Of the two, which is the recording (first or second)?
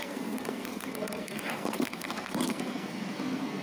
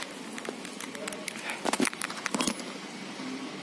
second